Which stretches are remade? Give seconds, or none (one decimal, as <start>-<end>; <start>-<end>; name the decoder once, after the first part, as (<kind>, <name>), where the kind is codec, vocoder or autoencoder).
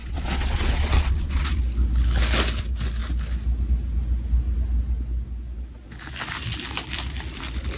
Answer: 0.0-1.6 (vocoder, Vocos)